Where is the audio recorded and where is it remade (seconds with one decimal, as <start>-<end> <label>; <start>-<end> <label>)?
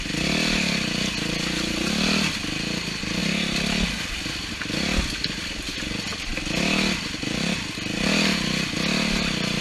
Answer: 0.0-9.6 recorded